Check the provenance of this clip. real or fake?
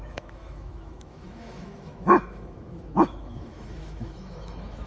fake